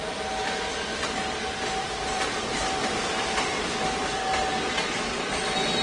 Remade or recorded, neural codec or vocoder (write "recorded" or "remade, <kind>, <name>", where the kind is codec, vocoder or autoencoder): remade, vocoder, BigVGAN v2